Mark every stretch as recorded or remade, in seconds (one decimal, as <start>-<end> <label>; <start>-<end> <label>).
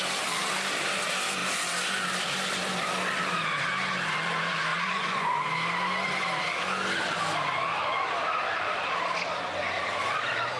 0.0-4.7 recorded; 4.7-5.4 remade; 5.4-10.6 recorded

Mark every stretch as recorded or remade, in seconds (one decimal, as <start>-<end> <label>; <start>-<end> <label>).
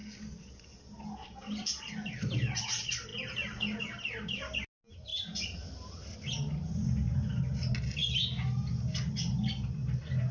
0.0-10.3 recorded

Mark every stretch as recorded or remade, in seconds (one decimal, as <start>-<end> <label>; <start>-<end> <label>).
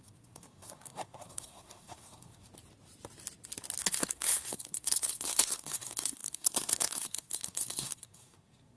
0.0-2.5 remade; 2.5-3.8 recorded; 3.8-8.8 remade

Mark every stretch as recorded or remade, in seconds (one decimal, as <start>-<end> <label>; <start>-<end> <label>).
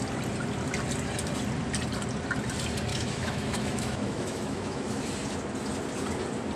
0.0-2.9 recorded; 2.9-5.0 remade; 5.0-6.6 recorded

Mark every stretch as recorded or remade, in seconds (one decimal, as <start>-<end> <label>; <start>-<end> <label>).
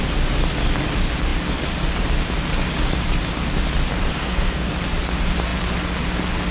0.0-4.1 recorded; 4.1-4.7 remade; 4.7-6.5 recorded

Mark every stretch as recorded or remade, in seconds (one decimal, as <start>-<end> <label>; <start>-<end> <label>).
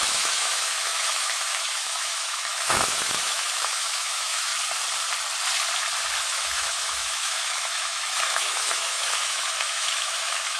0.0-4.5 remade; 4.5-6.2 recorded; 6.2-10.6 remade